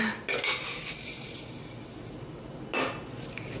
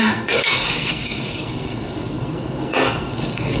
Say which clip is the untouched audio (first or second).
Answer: first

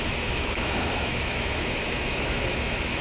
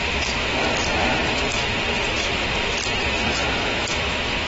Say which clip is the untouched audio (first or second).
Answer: second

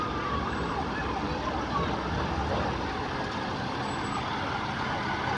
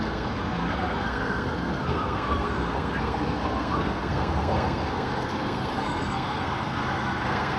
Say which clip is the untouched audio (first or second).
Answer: first